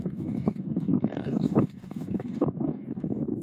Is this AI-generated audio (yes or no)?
yes